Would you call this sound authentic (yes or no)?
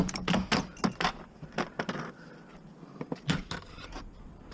yes